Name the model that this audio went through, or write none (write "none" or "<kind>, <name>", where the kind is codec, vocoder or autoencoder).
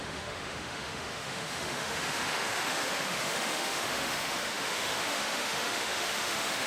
autoencoder, DAC-VAE